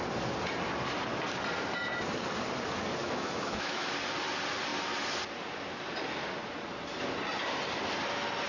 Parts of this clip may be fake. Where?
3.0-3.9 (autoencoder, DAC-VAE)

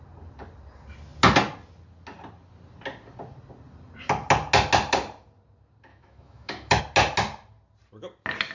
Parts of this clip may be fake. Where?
5.9-6.8 (autoencoder, DAC-VAE)